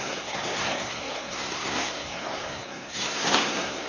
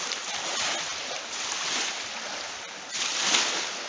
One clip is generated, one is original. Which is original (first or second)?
second